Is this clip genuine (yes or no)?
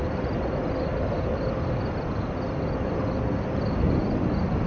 yes